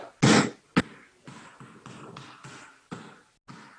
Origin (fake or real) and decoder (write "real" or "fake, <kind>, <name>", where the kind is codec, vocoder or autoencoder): real